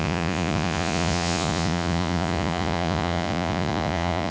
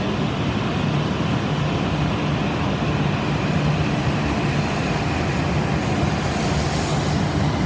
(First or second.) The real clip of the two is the second